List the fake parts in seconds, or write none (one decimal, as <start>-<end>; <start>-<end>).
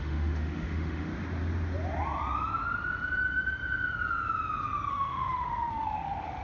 0.0-1.1; 4.9-6.4